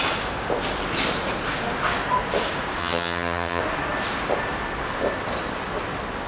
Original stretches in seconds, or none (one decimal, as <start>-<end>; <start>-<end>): 0.0-2.8; 3.6-6.3